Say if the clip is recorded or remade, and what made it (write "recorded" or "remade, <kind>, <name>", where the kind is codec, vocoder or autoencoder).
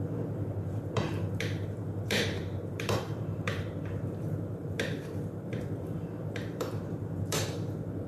remade, vocoder, BigVGAN v2